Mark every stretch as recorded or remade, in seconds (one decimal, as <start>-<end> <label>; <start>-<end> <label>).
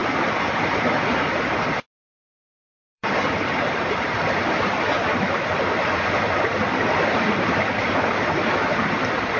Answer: 0.0-1.8 recorded; 1.8-9.4 remade